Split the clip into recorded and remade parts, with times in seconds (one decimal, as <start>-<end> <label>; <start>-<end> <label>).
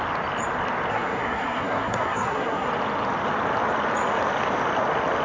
0.0-0.9 recorded; 0.9-2.7 remade; 2.7-5.2 recorded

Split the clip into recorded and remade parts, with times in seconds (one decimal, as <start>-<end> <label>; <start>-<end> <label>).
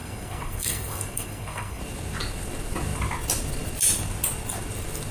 0.0-1.8 remade; 1.8-5.1 recorded